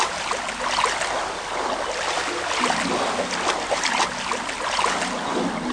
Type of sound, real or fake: real